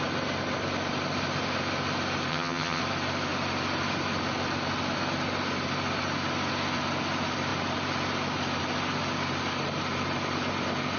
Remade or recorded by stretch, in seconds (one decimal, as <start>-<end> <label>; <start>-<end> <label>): 0.0-2.3 recorded; 2.3-2.8 remade; 2.8-11.0 recorded